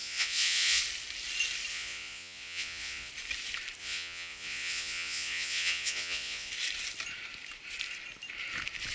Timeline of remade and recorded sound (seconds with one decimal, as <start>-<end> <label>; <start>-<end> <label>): 0.0-0.8 remade; 0.8-1.7 recorded; 1.7-3.1 remade; 3.1-3.8 recorded; 3.8-6.5 remade; 6.5-8.9 recorded